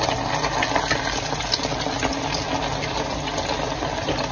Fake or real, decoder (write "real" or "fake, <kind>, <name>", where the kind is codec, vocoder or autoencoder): real